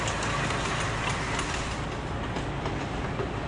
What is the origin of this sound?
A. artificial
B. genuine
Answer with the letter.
B